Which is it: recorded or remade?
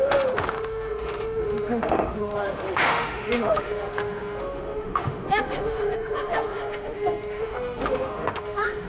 remade